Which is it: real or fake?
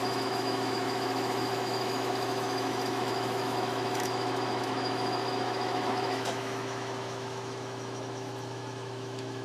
fake